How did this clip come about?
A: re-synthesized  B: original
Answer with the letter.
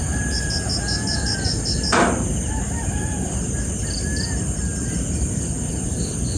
B